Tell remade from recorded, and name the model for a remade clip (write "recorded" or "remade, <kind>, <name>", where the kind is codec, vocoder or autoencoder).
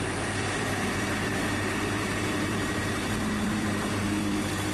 remade, vocoder, BigVGAN v2